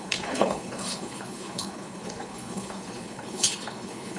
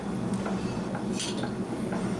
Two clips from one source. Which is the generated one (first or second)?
first